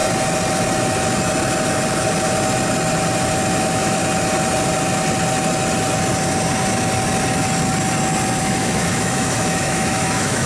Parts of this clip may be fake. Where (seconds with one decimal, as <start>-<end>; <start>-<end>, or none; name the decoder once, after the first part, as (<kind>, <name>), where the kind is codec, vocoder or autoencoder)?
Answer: 3.6-4.0 (autoencoder, DAC-VAE); 8.4-10.5